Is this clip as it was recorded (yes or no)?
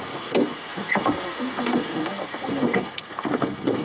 no